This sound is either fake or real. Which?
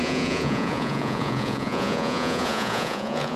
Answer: fake